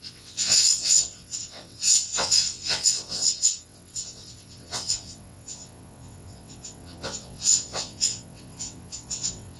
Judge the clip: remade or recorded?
remade